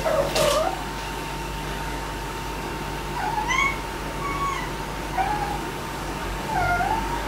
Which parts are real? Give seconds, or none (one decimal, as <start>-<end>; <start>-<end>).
2.7-5.5